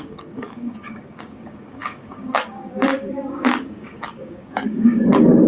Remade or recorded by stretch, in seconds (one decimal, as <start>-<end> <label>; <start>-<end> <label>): 0.0-5.5 remade